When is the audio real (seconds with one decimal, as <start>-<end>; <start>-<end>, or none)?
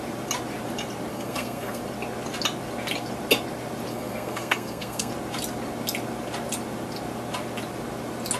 0.0-1.1; 1.8-3.9; 5.1-8.4